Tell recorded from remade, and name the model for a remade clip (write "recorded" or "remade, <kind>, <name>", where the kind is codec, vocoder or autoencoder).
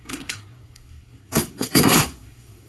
remade, codec, SNAC